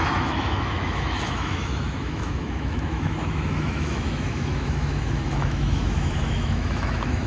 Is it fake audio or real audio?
fake